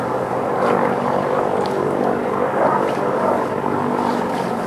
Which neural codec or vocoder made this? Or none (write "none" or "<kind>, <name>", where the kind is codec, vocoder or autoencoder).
codec, DAC